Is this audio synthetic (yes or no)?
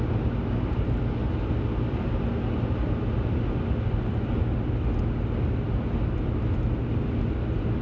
no